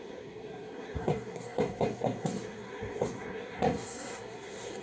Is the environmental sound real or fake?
fake